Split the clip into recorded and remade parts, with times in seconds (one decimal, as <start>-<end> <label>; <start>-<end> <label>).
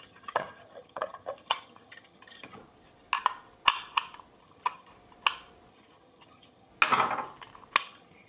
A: 0.0-2.6 remade; 2.6-4.4 recorded; 4.4-4.9 remade; 4.9-5.7 recorded; 5.7-6.7 remade; 6.7-7.8 recorded; 7.8-8.3 remade